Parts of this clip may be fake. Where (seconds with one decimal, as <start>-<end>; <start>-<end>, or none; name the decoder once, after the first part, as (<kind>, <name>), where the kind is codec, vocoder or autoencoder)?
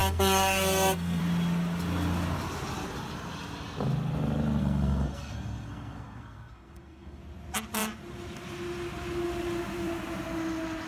0.0-1.2 (codec, SNAC); 4.6-7.2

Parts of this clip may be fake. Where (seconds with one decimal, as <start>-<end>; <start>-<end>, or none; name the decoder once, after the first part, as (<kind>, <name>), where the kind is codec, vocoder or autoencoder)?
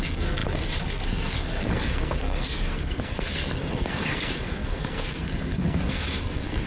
0.0-6.7 (codec, SNAC)